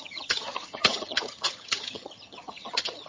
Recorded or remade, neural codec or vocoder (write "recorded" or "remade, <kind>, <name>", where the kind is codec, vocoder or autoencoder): remade, vocoder, HiFi-GAN